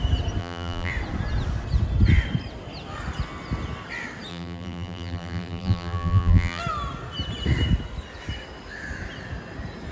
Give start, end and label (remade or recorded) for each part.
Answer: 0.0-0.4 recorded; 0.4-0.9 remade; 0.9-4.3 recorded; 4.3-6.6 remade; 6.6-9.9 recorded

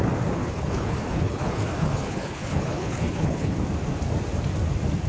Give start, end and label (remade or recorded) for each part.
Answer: 0.0-0.4 recorded; 0.4-3.5 remade; 3.5-5.1 recorded